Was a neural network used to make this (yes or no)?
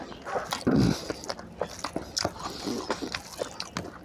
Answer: no